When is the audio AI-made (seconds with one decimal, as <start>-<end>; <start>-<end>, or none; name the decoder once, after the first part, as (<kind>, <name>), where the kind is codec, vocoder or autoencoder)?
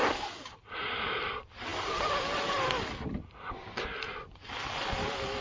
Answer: none